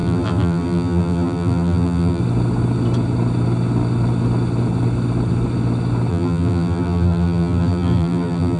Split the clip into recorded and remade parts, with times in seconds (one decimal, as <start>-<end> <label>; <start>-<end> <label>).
0.0-2.2 remade; 2.2-6.1 recorded; 6.1-8.6 remade